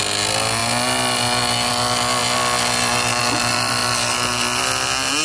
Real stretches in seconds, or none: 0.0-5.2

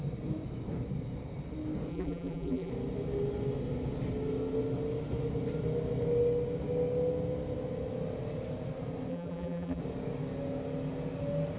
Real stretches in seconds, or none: 0.0-1.9; 2.7-9.1; 9.8-11.6

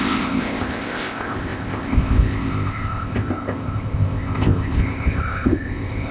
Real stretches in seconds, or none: none